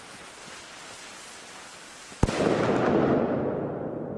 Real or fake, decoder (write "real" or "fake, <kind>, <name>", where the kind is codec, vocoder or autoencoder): real